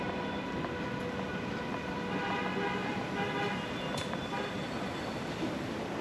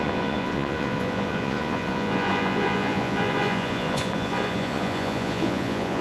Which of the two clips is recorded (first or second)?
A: first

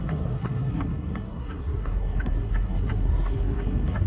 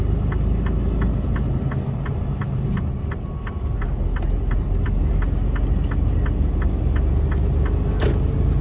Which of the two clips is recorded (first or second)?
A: second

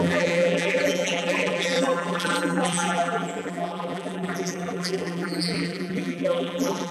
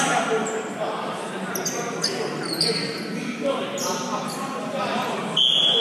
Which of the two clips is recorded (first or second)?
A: second